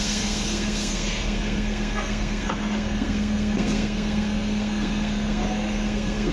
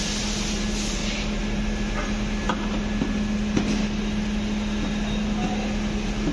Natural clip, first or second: second